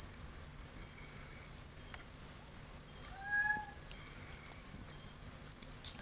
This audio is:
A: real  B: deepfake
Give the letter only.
A